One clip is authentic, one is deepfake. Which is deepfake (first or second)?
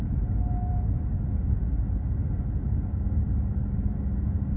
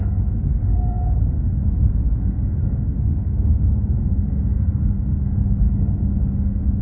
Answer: second